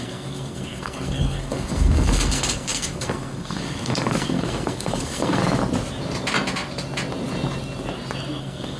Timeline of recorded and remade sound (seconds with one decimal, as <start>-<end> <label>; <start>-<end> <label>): 0.0-5.4 remade; 5.4-8.4 recorded; 8.4-8.8 remade